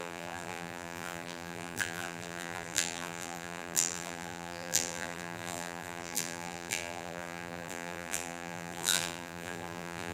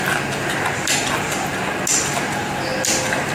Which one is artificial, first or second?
first